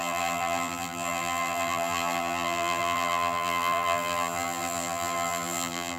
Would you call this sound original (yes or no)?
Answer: no